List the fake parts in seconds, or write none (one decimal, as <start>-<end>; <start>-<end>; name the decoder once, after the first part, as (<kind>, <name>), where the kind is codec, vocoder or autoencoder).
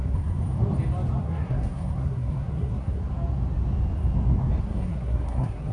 0.0-0.4 (codec, SNAC); 1.2-3.0; 4.6-5.7